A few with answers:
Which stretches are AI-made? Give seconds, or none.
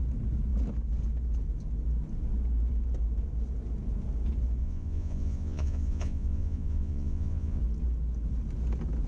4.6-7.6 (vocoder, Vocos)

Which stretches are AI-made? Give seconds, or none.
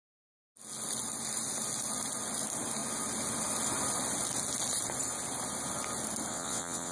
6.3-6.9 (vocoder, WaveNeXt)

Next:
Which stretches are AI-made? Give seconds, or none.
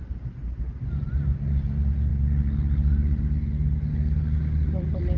none